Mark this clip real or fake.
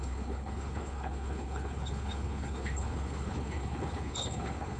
fake